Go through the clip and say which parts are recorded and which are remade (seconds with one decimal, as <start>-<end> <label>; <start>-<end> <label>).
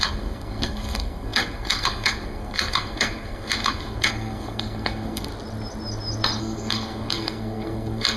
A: 0.0-5.3 remade; 5.3-6.4 recorded; 6.4-8.2 remade